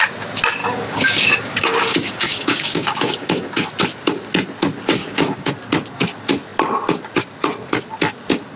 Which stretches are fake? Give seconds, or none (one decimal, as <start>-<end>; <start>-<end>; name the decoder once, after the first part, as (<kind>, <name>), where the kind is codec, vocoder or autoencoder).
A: 0.6-3.7 (codec, DAC); 5.0-5.5